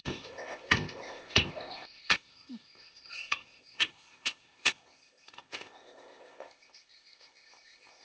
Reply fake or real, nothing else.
fake